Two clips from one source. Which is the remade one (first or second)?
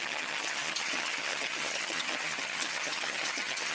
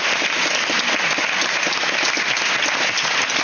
first